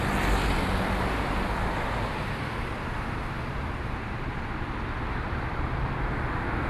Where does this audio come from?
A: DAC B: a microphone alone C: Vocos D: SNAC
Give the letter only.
B